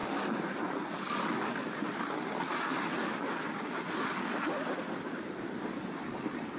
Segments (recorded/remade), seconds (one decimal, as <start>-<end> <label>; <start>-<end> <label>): 0.0-6.6 recorded